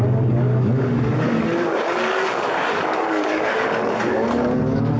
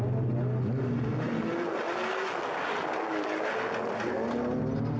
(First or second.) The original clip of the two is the second